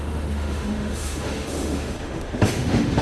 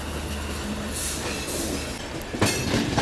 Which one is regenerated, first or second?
first